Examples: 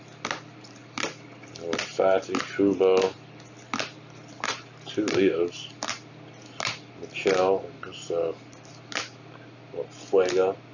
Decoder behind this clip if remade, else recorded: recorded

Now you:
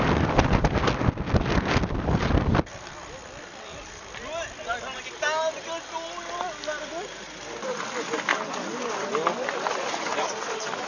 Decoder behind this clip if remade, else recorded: recorded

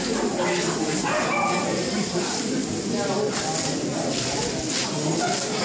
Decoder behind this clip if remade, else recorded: recorded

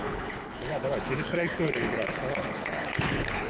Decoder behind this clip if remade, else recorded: remade, codec, HILCodec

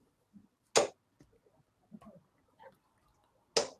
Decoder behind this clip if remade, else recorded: recorded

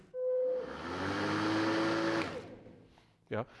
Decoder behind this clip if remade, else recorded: recorded